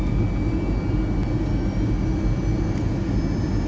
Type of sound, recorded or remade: recorded